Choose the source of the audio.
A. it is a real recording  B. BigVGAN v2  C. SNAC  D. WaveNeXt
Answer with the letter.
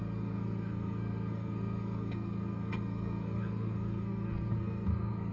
C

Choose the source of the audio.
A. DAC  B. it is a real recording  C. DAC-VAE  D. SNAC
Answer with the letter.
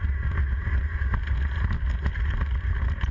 B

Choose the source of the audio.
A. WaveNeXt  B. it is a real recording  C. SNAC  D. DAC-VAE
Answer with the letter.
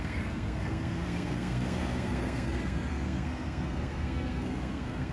C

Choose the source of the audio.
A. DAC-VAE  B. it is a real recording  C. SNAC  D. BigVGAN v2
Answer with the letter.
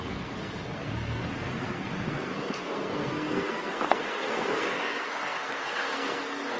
C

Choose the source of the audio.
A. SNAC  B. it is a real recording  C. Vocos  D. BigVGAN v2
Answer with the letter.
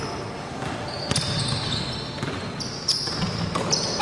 B